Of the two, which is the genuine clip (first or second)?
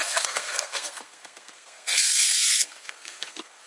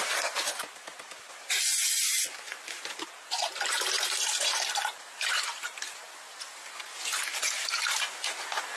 second